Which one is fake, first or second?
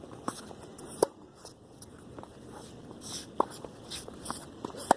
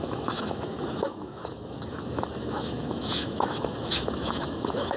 second